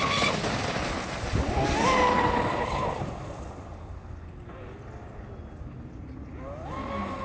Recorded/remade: recorded